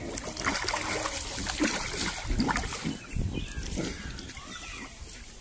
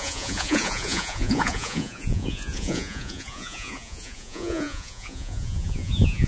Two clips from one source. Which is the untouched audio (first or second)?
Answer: first